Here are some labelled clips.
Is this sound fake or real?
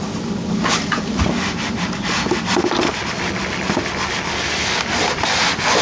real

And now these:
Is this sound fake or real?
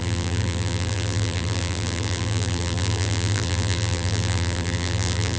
fake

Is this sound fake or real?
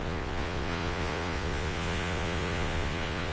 fake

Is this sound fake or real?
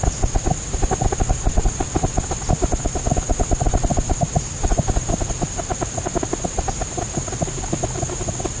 real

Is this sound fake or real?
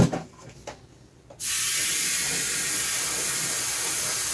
real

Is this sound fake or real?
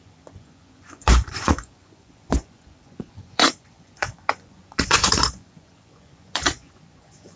fake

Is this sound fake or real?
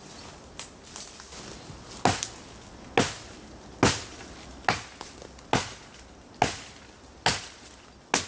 real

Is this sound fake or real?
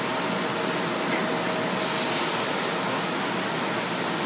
real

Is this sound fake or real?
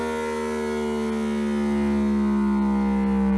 real